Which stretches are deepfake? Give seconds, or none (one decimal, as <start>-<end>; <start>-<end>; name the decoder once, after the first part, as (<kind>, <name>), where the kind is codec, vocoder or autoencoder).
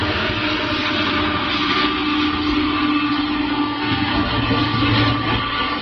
3.5-4.1 (codec, SNAC)